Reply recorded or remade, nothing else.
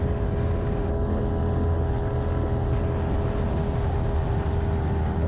recorded